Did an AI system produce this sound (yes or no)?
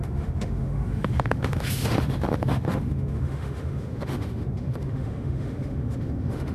yes